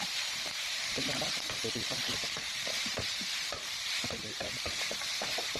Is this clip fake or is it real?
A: fake